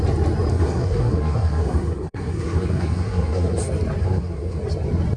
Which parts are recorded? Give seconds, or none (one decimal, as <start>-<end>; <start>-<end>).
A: 0.0-0.5; 3.6-4.0; 4.6-5.2